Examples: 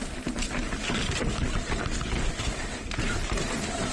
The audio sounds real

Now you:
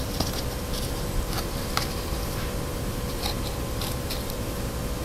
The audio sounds fake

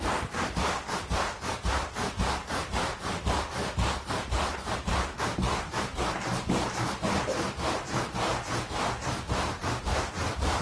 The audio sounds fake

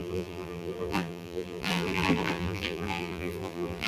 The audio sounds fake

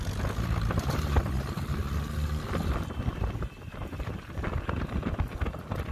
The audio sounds real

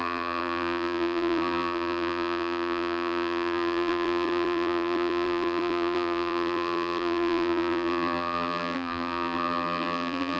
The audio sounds fake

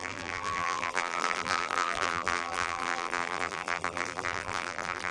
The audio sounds fake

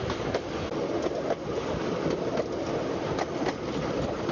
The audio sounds real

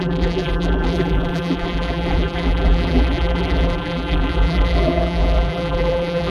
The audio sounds fake